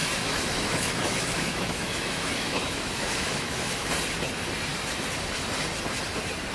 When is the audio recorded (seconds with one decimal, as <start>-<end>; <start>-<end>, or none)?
3.9-6.5